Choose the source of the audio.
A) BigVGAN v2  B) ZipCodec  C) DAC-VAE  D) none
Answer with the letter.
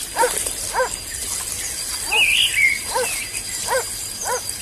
D